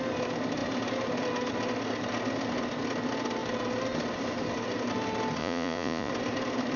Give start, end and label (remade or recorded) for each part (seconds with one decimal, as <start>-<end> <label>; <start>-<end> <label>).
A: 0.0-5.4 recorded; 5.4-6.1 remade; 6.1-6.8 recorded